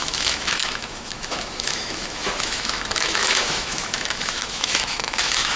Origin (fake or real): fake